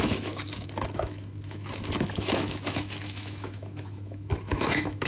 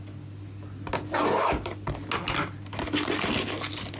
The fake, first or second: first